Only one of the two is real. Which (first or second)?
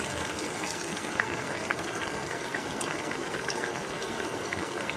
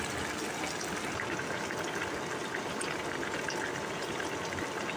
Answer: second